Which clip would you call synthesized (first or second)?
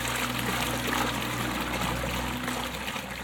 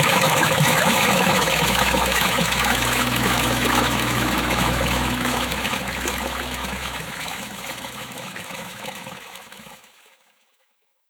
second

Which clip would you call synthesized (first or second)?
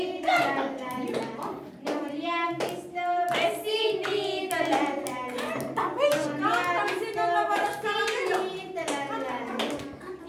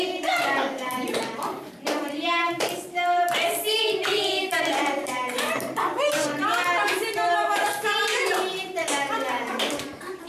second